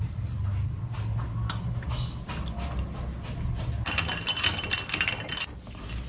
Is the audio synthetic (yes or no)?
no